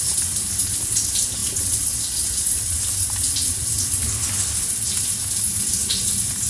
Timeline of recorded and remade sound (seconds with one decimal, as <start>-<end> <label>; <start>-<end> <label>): 0.0-6.5 recorded